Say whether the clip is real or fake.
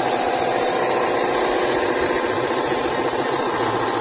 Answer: real